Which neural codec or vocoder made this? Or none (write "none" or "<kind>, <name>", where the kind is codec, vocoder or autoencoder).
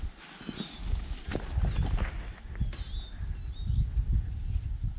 none